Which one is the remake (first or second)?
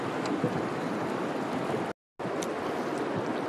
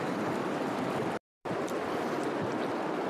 second